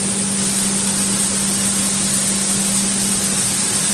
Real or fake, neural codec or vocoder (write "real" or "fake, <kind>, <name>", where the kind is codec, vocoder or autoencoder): real